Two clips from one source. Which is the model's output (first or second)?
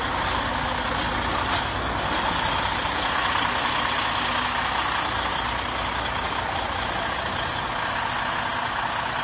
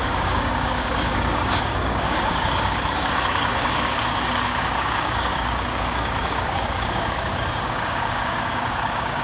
second